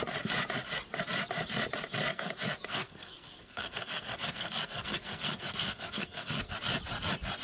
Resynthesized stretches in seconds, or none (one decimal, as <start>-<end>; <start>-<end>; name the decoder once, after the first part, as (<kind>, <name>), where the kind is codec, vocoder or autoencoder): 2.1-6.5 (codec, SNAC)

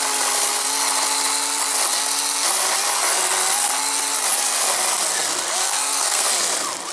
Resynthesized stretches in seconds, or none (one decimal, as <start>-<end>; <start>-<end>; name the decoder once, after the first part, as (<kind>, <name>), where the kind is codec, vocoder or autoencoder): 5.6-6.3 (codec, SNAC)

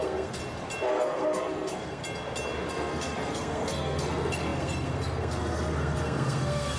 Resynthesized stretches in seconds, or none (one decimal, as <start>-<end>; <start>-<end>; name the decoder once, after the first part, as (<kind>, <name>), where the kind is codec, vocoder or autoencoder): 0.0-0.4 (codec, SNAC); 0.9-2.0; 2.7-6.8